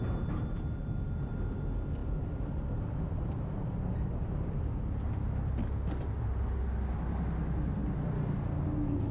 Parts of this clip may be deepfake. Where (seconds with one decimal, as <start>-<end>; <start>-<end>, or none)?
2.0-4.7